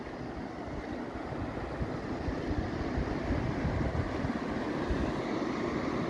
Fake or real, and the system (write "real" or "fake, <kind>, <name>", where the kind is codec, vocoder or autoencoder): real